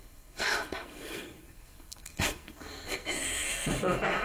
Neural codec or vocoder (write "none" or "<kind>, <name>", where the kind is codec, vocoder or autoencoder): codec, SNAC